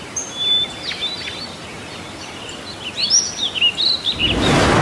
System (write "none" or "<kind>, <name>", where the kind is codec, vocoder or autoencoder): none